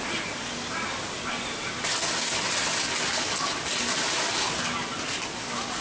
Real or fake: real